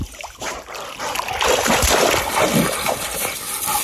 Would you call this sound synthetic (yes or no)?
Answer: no